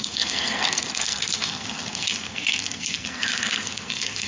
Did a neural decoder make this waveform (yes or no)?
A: yes